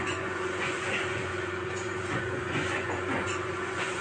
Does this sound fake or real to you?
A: fake